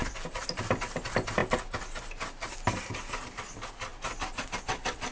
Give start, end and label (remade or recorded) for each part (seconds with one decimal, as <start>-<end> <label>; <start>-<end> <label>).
0.0-0.6 remade; 0.6-5.1 recorded